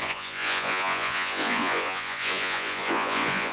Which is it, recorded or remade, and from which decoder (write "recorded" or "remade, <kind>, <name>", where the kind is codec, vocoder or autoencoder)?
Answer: remade, vocoder, Vocos